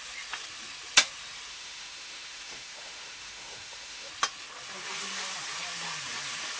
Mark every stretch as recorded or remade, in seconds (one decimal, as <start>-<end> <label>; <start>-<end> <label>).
0.0-1.5 recorded; 1.5-4.1 remade; 4.1-6.6 recorded